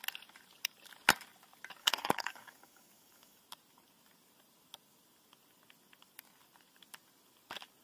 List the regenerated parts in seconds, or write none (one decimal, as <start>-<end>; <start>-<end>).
1.8-3.4